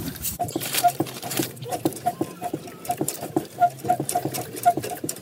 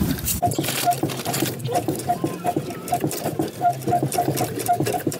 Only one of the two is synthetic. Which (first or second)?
first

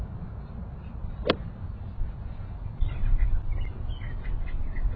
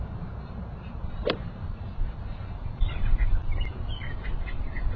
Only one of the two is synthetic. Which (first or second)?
second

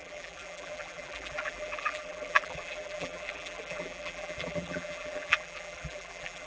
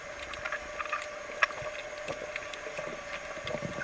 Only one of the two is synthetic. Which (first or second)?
first